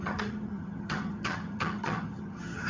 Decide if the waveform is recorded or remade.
remade